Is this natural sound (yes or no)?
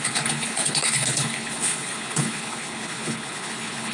no